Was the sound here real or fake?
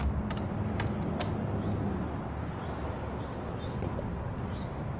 real